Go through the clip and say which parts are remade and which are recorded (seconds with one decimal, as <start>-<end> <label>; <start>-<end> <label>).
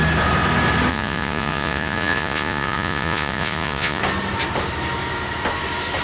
0.0-0.9 recorded; 0.9-4.0 remade; 4.0-6.0 recorded